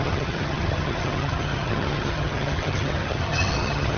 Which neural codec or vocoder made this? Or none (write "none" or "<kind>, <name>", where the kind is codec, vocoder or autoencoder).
vocoder, HiFi-GAN